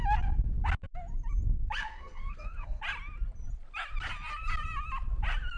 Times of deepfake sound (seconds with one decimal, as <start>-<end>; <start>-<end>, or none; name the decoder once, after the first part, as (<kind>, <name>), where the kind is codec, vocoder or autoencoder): 1.8-2.8 (codec, SNAC)